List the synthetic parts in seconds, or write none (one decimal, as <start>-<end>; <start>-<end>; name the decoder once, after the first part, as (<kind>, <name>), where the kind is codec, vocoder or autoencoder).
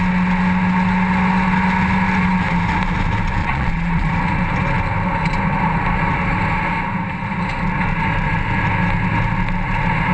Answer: 3.4-4.1 (vocoder, Vocos)